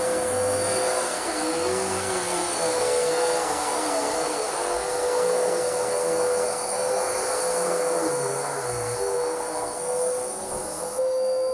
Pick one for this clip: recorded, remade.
remade